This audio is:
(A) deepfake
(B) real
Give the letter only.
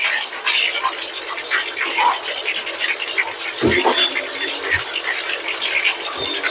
B